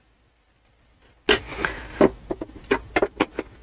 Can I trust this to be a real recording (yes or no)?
yes